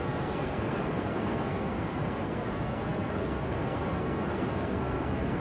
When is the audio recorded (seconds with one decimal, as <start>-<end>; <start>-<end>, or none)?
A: none